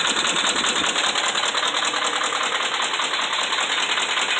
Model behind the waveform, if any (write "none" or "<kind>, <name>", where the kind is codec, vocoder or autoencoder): none